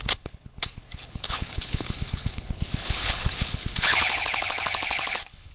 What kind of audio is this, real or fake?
fake